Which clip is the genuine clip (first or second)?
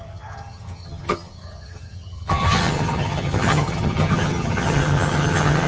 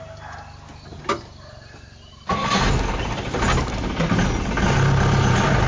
second